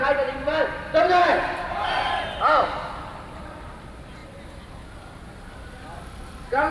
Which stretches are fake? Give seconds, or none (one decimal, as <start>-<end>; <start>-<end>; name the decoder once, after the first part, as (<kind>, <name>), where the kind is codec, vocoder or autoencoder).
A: 1.2-2.1 (vocoder, BigVGAN v2)